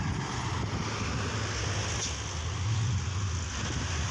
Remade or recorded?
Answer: recorded